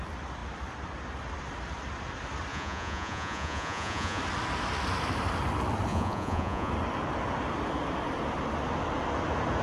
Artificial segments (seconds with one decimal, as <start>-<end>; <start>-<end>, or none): 2.5-4.2; 5.9-6.7